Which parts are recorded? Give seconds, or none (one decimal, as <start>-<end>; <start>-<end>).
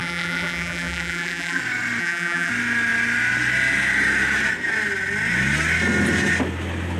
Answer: 1.6-2.0; 2.5-7.0